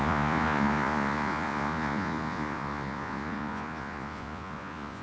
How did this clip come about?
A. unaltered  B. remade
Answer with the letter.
B